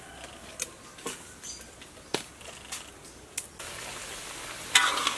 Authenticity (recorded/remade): recorded